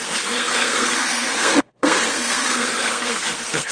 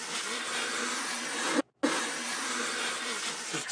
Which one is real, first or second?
second